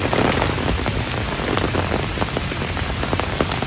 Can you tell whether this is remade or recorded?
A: recorded